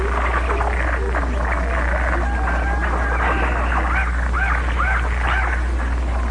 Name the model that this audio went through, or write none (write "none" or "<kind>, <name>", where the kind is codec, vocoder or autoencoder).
none